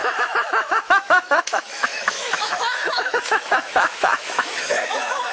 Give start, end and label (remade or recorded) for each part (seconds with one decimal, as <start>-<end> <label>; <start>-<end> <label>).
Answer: 0.0-5.3 remade